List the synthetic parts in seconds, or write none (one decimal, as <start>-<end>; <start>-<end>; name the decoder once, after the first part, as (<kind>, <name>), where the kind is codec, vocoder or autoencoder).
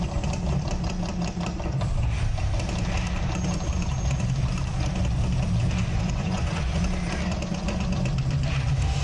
5.8-6.8 (vocoder, Vocos)